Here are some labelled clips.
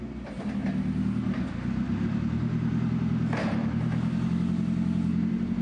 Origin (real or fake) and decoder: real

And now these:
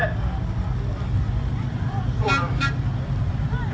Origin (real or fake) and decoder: fake, vocoder, BigVGAN v2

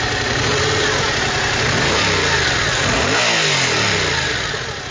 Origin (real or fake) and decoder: real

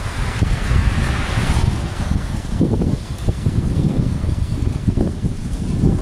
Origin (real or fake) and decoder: fake, codec, SNAC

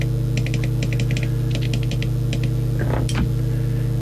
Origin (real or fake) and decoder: real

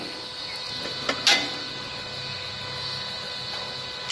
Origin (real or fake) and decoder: real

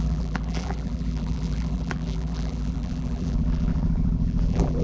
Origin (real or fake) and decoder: fake, vocoder, BigVGAN v2